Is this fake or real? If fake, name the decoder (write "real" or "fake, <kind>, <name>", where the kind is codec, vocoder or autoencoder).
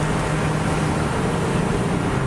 real